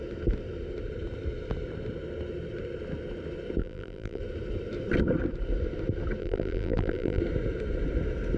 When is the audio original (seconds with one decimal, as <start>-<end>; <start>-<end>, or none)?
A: 0.0-3.6; 4.2-6.2; 7.2-8.4